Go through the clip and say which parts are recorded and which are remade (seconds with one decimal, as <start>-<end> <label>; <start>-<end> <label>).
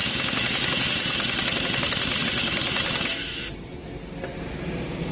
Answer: 0.0-5.1 recorded